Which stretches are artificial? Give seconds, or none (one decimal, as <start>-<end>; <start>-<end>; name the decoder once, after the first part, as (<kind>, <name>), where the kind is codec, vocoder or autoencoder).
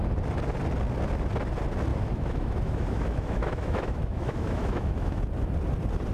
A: 1.9-5.2 (autoencoder, DAC-VAE)